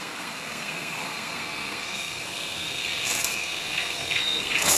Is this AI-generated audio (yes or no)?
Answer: yes